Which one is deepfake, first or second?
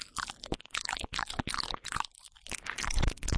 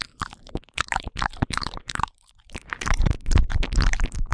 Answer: second